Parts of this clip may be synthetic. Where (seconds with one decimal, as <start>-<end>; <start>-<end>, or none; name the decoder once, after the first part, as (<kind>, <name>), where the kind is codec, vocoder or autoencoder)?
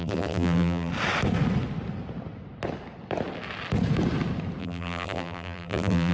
0.0-0.9 (vocoder, BigVGAN v2); 4.6-6.1